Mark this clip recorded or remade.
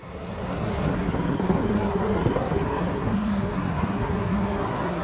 remade